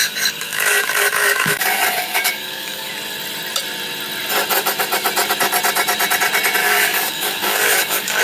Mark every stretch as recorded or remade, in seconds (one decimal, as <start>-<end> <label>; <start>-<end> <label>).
0.0-2.9 remade; 2.9-6.6 recorded; 6.6-8.2 remade